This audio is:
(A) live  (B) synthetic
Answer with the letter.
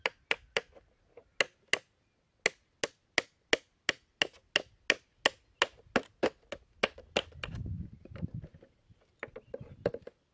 A